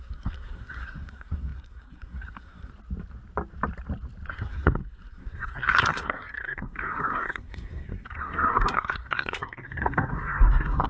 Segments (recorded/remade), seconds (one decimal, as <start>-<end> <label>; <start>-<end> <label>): 0.0-2.7 remade; 2.7-4.3 recorded; 4.3-10.9 remade